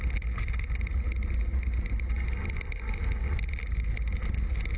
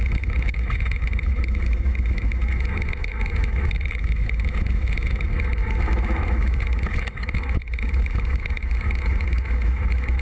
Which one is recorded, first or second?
first